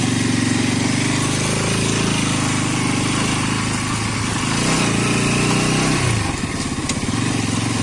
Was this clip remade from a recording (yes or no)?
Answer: no